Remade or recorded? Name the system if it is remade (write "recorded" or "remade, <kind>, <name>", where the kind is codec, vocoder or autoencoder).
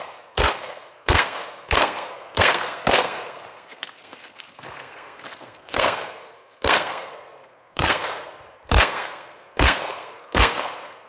remade, codec, SNAC